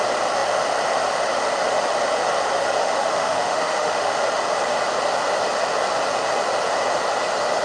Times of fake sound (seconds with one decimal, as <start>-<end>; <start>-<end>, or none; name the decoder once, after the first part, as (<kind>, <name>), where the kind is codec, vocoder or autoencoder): 2.8-4.2 (autoencoder, DAC-VAE)